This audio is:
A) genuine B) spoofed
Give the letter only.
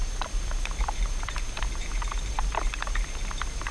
B